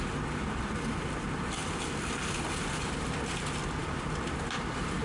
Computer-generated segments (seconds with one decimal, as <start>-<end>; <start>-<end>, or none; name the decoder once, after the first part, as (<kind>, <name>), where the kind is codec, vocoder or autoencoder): 0.0-5.0 (vocoder, BigVGAN v2)